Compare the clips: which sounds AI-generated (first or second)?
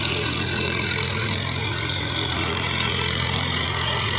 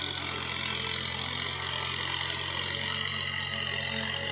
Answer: first